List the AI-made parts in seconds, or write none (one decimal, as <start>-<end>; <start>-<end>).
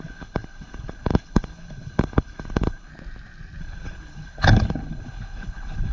0.0-2.9; 3.6-5.9